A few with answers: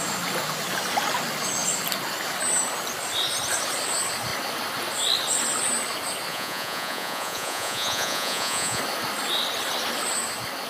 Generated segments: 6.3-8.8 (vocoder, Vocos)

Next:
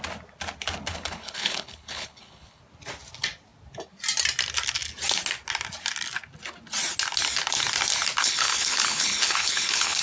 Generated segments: 0.9-2.6 (codec, HILCodec); 8.2-10.0

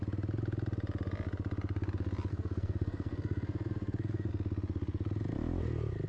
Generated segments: 2.3-4.3 (codec, SNAC)

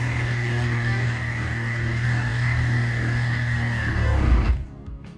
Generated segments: 0.0-5.2 (codec, DAC)